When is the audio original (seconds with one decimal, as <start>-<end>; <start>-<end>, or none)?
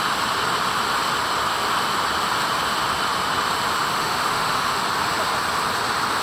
0.0-3.9; 4.8-6.2